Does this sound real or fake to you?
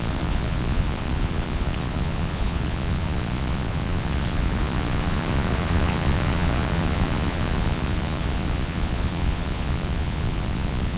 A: fake